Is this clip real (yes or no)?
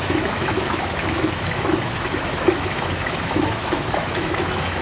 no